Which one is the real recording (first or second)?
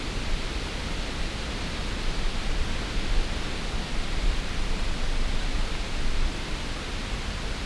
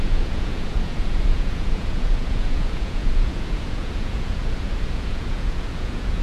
first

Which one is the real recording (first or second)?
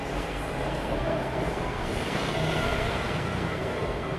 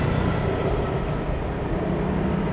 second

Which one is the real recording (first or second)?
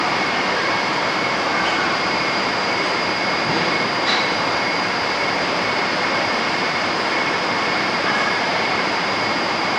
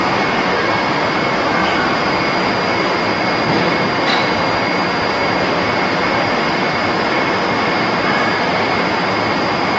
second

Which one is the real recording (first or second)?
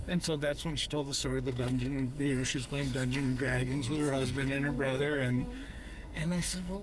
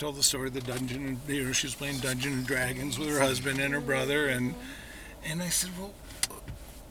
second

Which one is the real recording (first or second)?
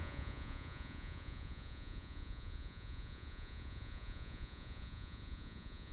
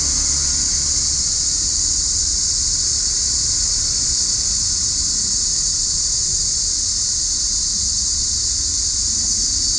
second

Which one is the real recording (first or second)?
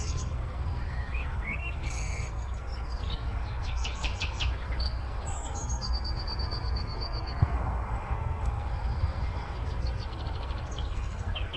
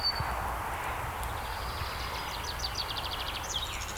second